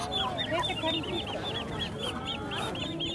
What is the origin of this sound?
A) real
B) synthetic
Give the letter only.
A